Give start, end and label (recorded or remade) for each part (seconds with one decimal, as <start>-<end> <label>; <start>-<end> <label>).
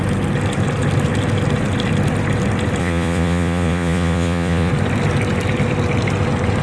0.0-2.8 recorded; 2.8-4.7 remade; 4.7-6.6 recorded